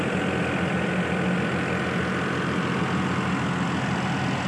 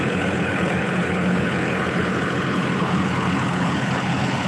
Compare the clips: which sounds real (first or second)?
first